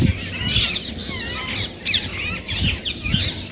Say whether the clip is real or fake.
real